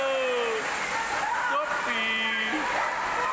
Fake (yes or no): no